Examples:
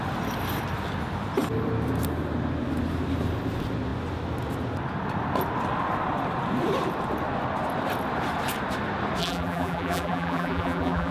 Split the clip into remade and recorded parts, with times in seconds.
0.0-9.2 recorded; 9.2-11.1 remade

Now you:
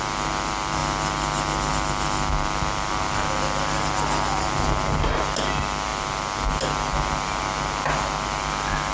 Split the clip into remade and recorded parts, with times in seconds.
0.0-8.9 recorded

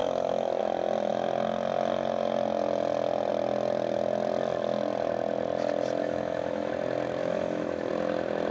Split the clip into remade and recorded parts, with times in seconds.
0.0-0.6 remade; 0.6-6.0 recorded; 6.0-6.7 remade; 6.7-7.2 recorded; 7.2-7.9 remade; 7.9-8.5 recorded

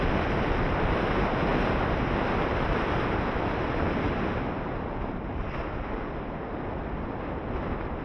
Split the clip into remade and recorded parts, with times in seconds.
0.0-8.0 recorded

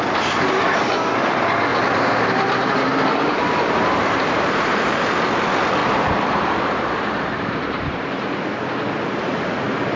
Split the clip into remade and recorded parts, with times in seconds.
0.0-1.7 recorded; 1.7-5.1 remade; 5.1-5.8 recorded; 5.8-8.4 remade; 8.4-10.0 recorded